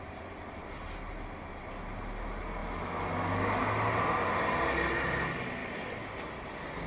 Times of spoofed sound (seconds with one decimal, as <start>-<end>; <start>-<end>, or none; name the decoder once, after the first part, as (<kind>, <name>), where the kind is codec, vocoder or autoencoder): 2.6-3.7 (autoencoder, DAC-VAE)